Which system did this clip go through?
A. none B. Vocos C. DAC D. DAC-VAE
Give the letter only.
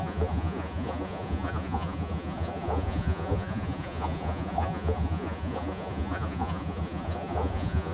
B